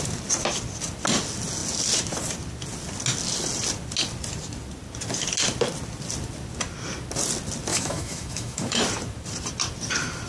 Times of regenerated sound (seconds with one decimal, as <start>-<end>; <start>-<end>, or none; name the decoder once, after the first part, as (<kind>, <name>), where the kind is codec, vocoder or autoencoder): 7.7-8.8 (autoencoder, DAC-VAE)